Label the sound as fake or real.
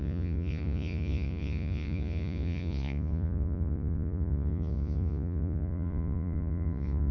fake